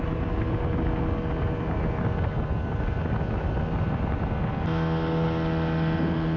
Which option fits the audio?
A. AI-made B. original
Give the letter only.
B